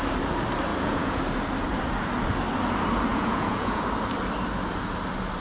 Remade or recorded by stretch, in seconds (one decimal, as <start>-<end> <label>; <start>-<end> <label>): 0.0-0.7 recorded; 0.7-1.2 remade; 1.2-3.1 recorded; 3.1-3.8 remade; 3.8-5.4 recorded